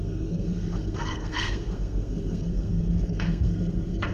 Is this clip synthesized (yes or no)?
yes